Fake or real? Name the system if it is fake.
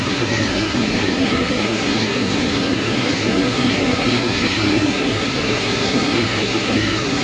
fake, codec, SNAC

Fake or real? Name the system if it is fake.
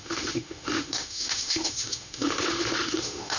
fake, autoencoder, DAC-VAE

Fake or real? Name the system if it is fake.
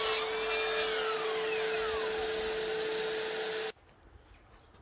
real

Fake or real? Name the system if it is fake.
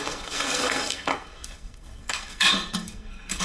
fake, codec, SNAC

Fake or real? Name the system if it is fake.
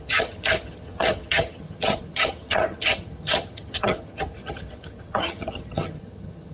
fake, vocoder, HiFi-GAN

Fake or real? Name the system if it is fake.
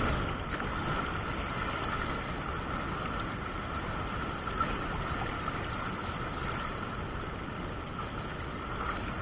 real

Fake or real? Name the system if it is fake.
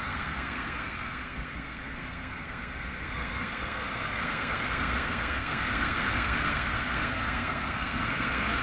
fake, codec, SNAC